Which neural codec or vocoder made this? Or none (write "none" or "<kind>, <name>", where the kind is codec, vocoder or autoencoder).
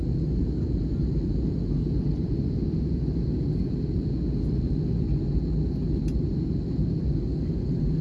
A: none